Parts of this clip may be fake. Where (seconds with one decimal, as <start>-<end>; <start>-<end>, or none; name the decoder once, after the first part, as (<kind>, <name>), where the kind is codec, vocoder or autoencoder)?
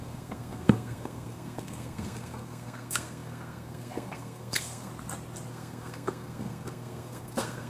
0.0-4.9 (codec, SNAC); 5.5-7.7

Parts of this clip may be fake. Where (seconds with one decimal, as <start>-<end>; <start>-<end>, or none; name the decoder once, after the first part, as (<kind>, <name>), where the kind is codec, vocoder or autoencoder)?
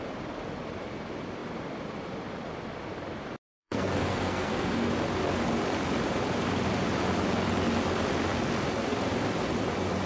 3.5-4.9 (codec, SNAC)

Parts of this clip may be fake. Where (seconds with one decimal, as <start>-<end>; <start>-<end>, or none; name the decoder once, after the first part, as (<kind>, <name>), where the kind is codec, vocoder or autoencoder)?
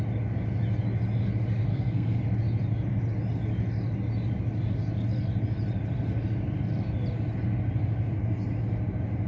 1.7-2.2 (codec, SNAC)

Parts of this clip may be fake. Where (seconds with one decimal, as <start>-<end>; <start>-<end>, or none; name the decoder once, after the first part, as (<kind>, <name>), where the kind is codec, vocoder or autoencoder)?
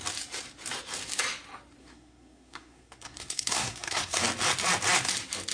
1.8-4.2 (codec, SNAC)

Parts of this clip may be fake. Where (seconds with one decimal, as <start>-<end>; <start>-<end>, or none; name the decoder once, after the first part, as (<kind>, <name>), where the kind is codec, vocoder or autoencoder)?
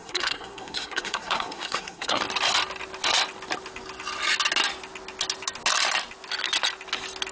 0.0-2.2 (codec, SNAC)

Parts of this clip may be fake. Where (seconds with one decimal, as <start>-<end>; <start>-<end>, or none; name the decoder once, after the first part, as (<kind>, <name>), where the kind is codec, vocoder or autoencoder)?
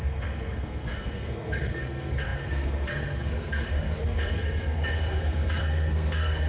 0.0-6.5 (codec, SNAC)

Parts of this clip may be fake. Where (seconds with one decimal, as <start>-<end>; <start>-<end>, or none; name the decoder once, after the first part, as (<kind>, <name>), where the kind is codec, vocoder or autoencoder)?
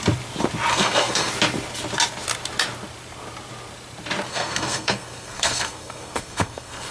0.7-1.3 (codec, SNAC); 4.3-6.9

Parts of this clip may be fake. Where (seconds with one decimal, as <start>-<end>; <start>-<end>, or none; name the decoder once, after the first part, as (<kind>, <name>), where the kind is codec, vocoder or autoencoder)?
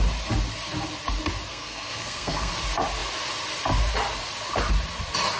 1.5-2.5 (codec, SNAC)